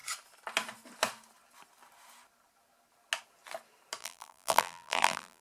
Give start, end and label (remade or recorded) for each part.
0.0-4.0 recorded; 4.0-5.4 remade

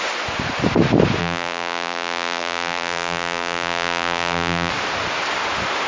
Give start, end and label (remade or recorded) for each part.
0.0-1.2 recorded; 1.2-4.7 remade; 4.7-5.9 recorded

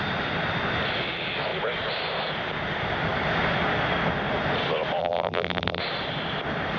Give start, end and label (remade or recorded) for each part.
0.0-5.0 recorded; 5.0-5.8 remade; 5.8-6.8 recorded